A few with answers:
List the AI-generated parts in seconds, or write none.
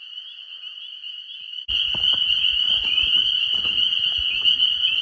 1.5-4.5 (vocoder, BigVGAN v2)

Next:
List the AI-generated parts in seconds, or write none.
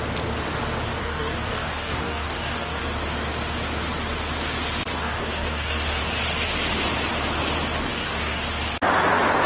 1.0-2.8 (codec, DAC); 4.9-6.0; 7.8-8.4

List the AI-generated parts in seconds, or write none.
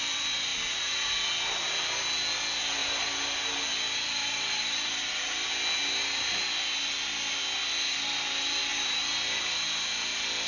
2.8-5.5 (vocoder, BigVGAN v2); 8.7-9.4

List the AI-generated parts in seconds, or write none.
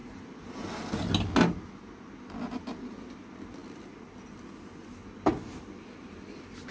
0.0-1.1 (vocoder, BigVGAN v2); 3.6-5.3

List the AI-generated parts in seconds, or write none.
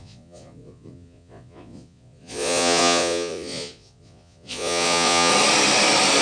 0.0-5.3 (vocoder, Vocos)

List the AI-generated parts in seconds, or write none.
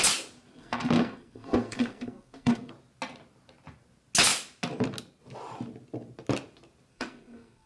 0.5-2.7 (codec, SNAC); 6.9-7.7